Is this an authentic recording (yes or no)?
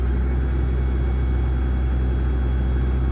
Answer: yes